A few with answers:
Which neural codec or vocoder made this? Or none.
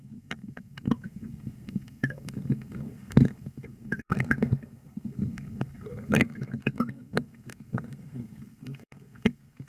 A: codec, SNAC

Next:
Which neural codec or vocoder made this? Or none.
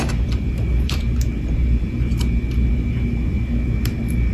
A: vocoder, BigVGAN v2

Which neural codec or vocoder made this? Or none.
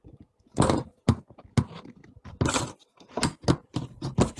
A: none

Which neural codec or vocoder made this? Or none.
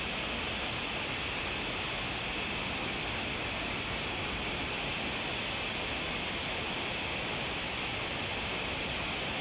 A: none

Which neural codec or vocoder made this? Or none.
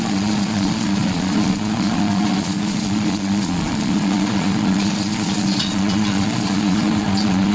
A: vocoder, Vocos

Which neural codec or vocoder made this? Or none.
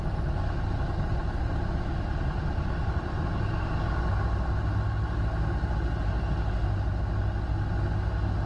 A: none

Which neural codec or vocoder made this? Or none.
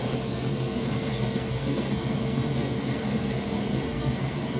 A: codec, SNAC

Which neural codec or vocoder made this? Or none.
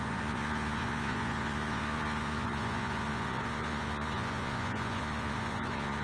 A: vocoder, Vocos